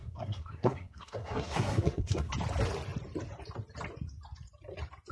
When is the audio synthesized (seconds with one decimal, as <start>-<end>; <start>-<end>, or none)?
0.0-2.3